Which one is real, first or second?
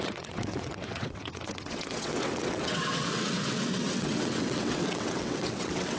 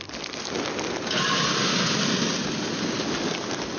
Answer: second